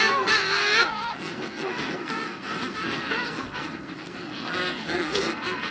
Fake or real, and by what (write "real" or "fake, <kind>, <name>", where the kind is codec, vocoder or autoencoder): fake, codec, SNAC